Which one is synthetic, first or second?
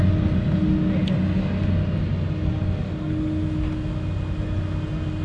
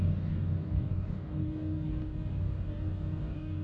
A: second